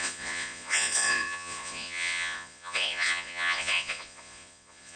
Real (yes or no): no